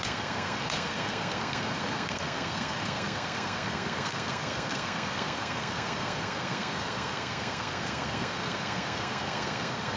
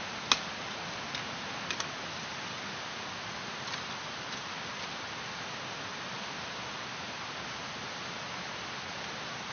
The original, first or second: second